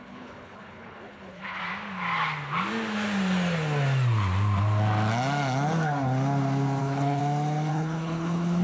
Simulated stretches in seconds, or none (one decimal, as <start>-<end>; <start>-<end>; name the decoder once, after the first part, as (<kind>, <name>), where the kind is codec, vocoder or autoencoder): 0.0-1.6 (codec, HILCodec); 6.8-7.2; 7.7-8.6